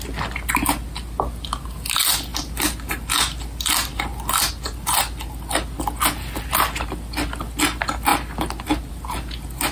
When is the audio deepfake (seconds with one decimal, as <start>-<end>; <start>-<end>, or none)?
none